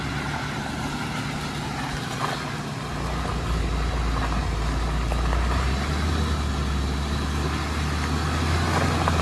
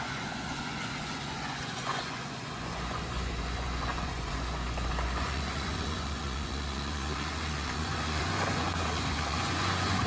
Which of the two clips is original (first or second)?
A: first